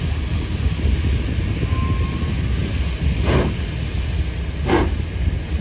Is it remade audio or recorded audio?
recorded